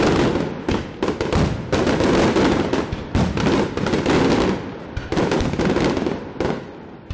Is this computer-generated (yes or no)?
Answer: no